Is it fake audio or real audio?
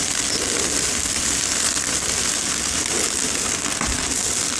real